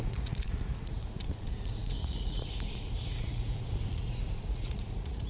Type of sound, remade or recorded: remade